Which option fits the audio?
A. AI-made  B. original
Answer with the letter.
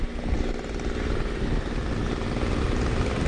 B